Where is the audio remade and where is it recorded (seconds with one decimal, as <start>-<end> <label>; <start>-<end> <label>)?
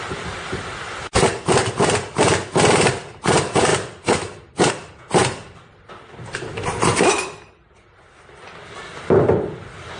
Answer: 0.0-10.0 recorded